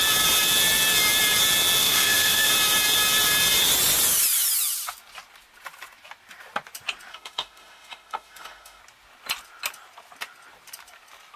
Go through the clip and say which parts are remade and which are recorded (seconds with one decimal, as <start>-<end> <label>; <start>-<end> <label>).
0.0-1.8 recorded; 1.8-2.5 remade; 2.5-7.1 recorded; 7.1-8.8 remade; 8.8-11.4 recorded